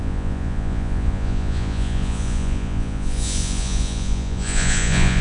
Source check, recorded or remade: remade